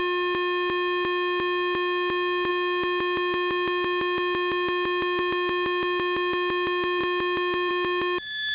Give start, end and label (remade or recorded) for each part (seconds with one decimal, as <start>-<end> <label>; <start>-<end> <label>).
0.0-8.5 recorded